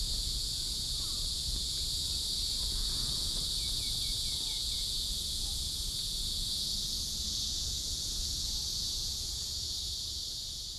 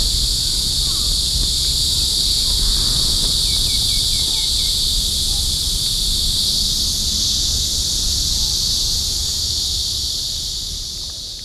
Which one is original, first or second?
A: second